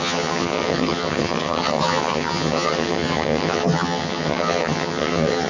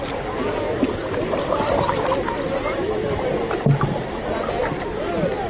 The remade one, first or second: first